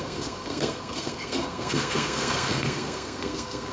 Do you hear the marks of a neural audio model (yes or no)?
yes